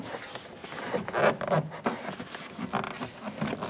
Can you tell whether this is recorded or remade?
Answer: recorded